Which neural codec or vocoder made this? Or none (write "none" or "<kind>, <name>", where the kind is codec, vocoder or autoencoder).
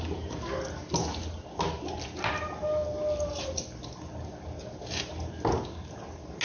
none